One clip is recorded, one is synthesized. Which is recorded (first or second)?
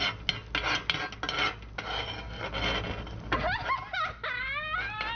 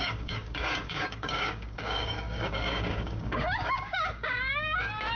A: first